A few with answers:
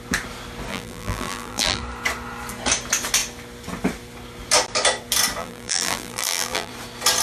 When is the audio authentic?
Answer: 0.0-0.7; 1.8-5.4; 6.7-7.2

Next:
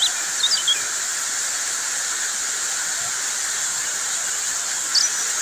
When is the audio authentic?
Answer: 0.0-1.1; 4.3-5.4

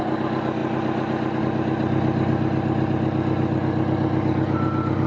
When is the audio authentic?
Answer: 0.0-5.1